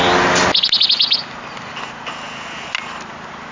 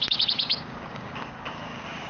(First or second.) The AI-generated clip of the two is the second